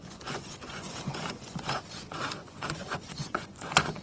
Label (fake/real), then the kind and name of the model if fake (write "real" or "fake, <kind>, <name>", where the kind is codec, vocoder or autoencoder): fake, vocoder, Vocos